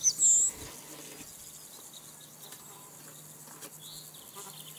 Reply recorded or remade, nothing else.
recorded